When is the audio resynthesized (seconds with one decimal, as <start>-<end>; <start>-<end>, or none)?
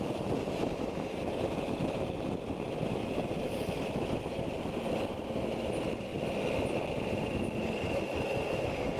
none